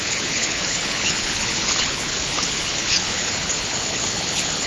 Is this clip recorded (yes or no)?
no